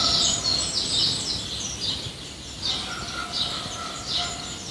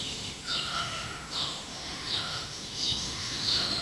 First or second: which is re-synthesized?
second